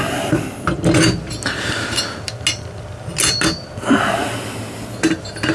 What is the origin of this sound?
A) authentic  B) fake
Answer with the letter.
A